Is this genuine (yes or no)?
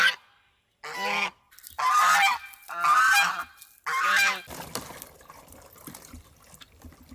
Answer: yes